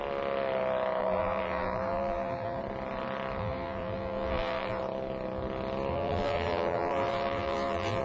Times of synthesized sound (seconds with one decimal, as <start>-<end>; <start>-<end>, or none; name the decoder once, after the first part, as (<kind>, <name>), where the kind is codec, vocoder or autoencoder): 1.0-2.6 (vocoder, BigVGAN v2); 3.4-4.8; 5.9-8.0